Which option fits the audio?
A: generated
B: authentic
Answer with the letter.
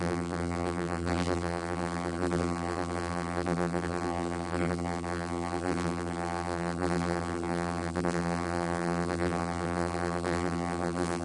A